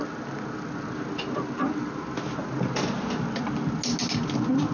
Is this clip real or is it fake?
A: real